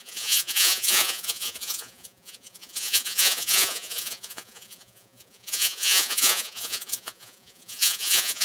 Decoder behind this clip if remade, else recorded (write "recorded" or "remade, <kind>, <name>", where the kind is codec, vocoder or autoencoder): remade, vocoder, Vocos